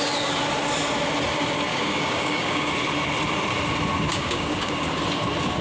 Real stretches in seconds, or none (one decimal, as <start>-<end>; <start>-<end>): 0.0-1.7; 2.7-4.1; 4.7-5.6